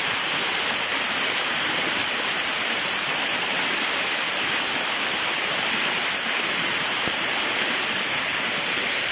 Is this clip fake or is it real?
fake